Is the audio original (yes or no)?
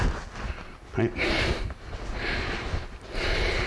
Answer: yes